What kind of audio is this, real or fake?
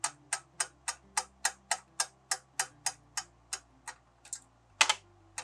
real